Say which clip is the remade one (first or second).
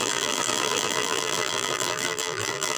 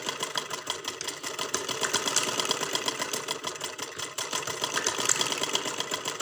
first